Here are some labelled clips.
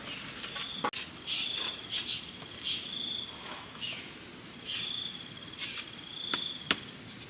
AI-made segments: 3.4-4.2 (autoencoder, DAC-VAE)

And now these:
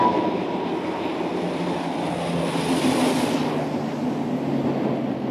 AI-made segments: none